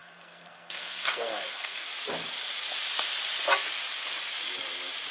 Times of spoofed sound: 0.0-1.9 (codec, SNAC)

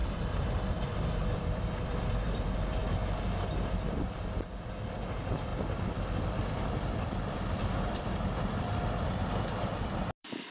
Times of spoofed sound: 0.0-2.8 (vocoder, BigVGAN v2); 4.5-5.5; 6.1-10.5

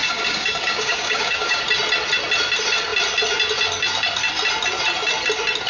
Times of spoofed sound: 0.0-1.6 (codec, DAC)

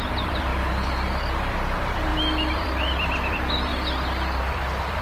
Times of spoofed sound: 0.0-0.5 (vocoder, BigVGAN v2); 1.2-3.7; 4.4-5.0

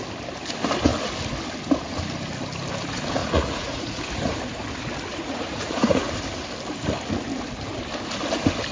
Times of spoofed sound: 3.2-4.0 (vocoder, Vocos); 5.1-6.1

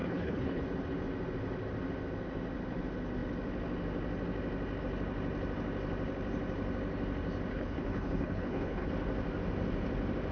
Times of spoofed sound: 0.0-0.6 (codec, HILCodec); 7.5-8.9

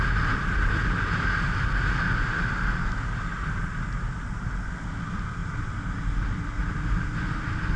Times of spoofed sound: none